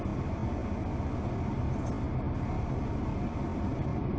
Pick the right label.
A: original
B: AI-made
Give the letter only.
A